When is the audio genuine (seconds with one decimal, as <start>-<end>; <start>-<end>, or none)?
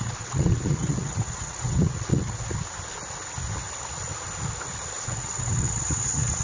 2.5-5.0